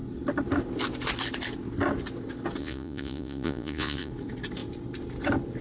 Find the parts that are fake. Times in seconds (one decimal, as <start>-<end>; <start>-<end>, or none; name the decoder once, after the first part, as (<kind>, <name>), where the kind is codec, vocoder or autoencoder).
2.6-4.1 (vocoder, Vocos)

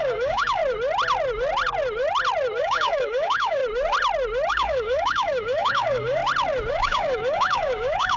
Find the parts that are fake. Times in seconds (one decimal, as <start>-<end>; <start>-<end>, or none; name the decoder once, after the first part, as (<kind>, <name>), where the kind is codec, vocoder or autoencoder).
0.0-0.6 (codec, DAC); 2.6-3.6; 4.5-6.2; 6.7-8.2

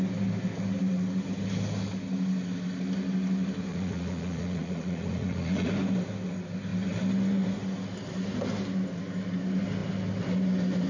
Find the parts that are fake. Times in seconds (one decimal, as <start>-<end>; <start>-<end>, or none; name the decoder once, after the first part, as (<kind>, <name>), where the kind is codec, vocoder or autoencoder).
3.7-5.7 (vocoder, Vocos)

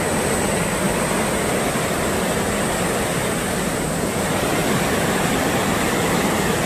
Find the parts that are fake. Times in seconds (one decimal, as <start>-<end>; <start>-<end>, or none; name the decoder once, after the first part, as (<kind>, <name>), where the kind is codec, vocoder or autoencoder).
none

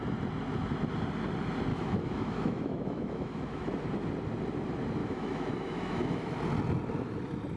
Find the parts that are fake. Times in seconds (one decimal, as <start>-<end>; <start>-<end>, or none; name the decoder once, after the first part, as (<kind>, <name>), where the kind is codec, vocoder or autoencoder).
1.7-3.7 (autoencoder, DAC-VAE); 5.0-6.4

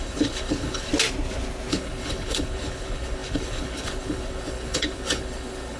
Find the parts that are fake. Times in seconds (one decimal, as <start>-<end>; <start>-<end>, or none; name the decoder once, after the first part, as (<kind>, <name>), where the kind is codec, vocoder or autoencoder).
0.0-0.9 (codec, HILCodec); 1.7-5.8

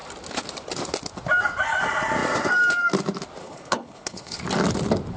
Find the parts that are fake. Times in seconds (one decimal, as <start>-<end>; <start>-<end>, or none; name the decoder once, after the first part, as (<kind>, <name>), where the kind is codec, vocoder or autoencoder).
3.4-4.4 (codec, HILCodec)

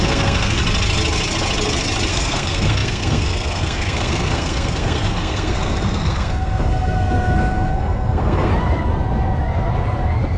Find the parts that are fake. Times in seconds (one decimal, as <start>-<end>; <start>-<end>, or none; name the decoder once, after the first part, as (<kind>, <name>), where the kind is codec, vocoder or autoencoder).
0.0-0.6 (codec, SNAC); 2.1-8.5